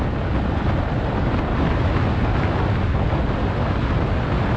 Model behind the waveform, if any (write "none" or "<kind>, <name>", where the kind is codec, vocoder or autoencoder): none